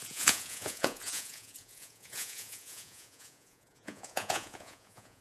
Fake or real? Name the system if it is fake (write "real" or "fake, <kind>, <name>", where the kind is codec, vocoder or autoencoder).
fake, vocoder, Vocos